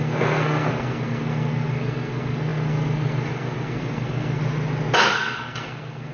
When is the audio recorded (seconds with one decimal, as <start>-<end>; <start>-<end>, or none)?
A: 4.4-5.0